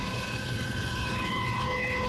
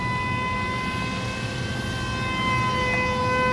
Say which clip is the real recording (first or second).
second